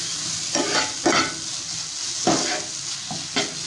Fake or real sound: real